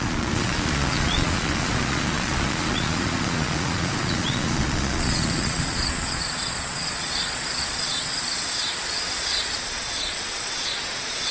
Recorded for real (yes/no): no